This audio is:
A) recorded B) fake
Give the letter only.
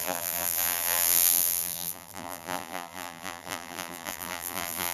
B